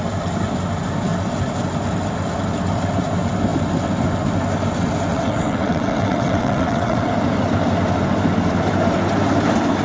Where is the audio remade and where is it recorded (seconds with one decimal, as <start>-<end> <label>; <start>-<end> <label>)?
0.0-5.1 recorded; 5.1-7.1 remade; 7.1-9.8 recorded